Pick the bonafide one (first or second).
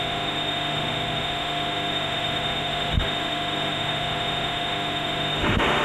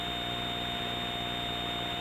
second